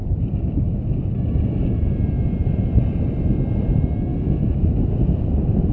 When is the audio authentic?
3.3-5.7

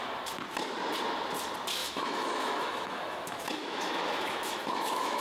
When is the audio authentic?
0.0-1.8

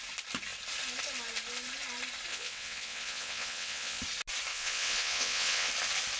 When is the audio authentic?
0.0-2.3; 4.0-4.5; 5.7-6.2

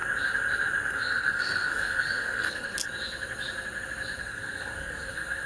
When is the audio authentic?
0.0-0.9; 2.7-4.2

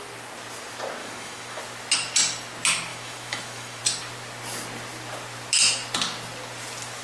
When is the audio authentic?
0.0-1.0; 1.6-2.9; 3.8-7.0